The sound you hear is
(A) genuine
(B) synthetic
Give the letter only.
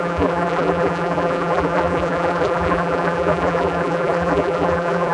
B